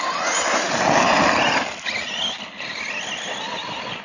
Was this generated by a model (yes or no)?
no